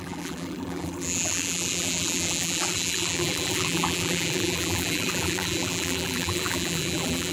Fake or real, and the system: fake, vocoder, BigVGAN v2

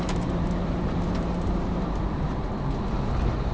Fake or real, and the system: fake, vocoder, BigVGAN v2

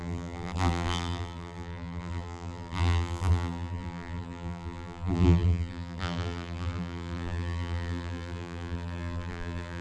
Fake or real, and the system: fake, vocoder, BigVGAN v2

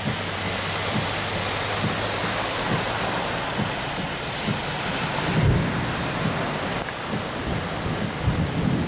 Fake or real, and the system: real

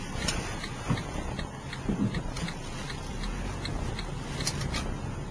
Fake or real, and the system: real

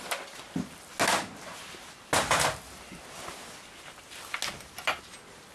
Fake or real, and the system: real